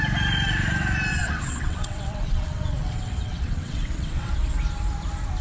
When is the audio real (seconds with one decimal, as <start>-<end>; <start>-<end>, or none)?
0.0-1.1; 4.3-5.4